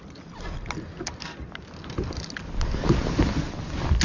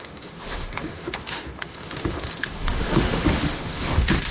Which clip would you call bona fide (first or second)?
first